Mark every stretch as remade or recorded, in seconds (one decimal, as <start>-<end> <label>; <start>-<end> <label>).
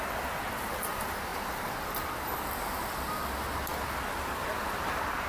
0.0-5.3 recorded